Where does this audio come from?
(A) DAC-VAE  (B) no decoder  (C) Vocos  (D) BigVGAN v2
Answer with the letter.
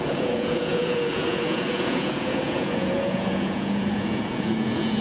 C